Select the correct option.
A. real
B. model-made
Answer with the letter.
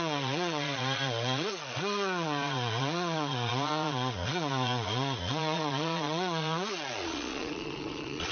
B